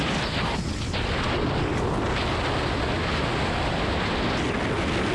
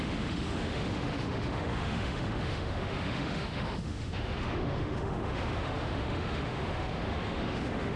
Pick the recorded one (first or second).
first